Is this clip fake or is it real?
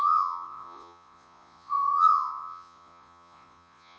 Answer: fake